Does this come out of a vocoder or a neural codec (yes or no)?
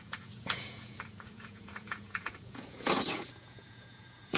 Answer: yes